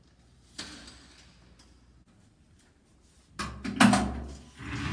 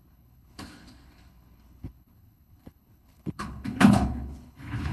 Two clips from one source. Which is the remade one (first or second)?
second